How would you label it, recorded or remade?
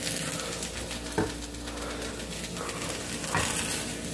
recorded